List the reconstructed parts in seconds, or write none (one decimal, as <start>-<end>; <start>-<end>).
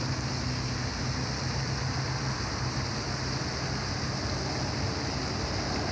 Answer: none